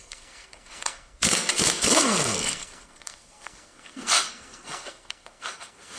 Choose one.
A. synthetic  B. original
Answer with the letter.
A